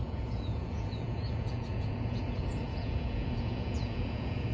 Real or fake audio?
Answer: fake